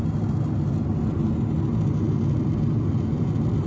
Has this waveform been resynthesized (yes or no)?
no